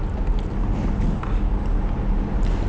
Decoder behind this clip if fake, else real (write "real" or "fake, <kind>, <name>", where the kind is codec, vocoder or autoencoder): real